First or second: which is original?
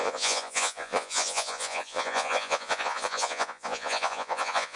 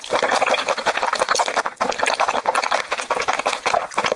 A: second